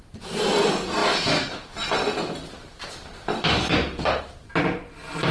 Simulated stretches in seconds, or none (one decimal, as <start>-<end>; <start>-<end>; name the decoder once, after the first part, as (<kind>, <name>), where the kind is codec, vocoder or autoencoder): none